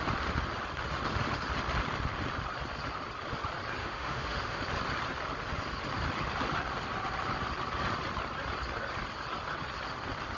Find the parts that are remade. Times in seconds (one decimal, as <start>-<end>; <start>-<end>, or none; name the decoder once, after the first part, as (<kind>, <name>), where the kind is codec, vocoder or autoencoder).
3.8-4.6 (autoencoder, DAC-VAE)